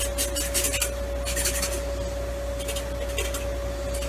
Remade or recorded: recorded